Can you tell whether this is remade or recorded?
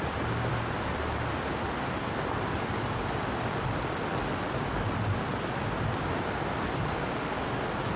recorded